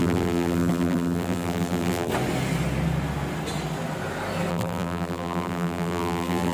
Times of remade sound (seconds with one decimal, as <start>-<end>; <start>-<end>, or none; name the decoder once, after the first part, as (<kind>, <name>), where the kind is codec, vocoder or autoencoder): 0.0-2.1 (vocoder, BigVGAN v2); 4.5-6.5